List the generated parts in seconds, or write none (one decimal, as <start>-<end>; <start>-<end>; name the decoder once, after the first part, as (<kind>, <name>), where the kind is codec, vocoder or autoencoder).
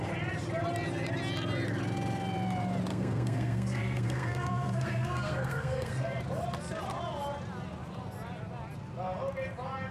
2.9-6.2 (codec, SNAC)